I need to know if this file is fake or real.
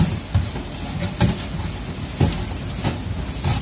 real